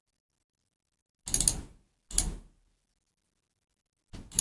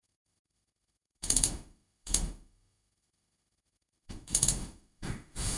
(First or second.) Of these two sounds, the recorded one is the first